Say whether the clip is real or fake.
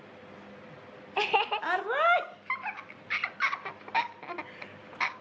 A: real